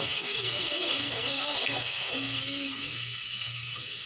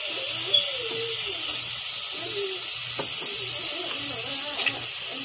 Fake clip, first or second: first